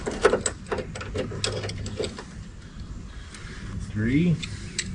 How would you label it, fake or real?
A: real